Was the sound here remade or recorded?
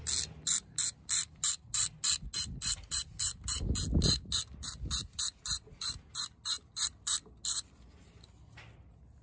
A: recorded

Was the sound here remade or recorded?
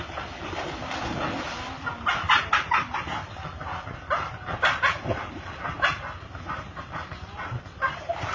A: recorded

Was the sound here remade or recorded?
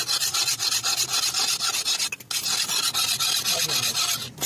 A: recorded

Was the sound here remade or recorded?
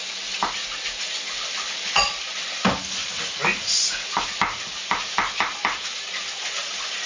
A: recorded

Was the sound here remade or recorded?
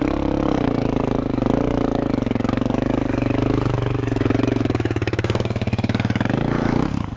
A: remade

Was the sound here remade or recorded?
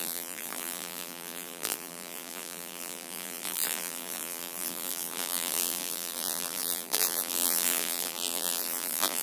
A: remade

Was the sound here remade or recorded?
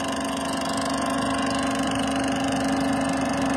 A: recorded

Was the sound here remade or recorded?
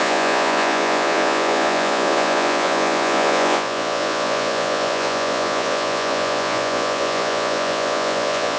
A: remade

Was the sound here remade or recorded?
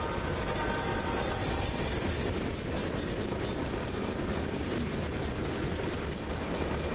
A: recorded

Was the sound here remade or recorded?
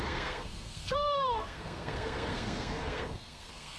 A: remade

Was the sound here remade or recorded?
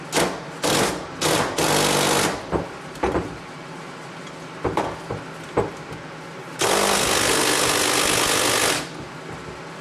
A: recorded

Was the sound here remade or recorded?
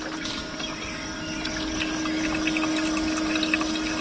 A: recorded